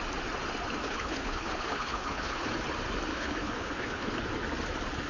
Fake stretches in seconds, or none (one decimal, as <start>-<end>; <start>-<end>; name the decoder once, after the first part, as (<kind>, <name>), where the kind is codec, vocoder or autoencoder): 0.8-2.5 (codec, HILCodec); 3.1-4.2